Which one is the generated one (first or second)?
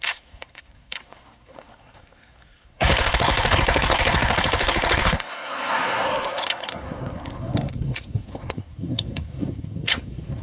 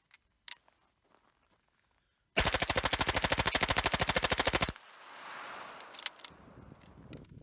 first